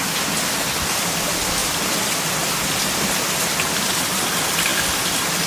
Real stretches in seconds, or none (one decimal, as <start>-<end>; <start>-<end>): 0.0-5.5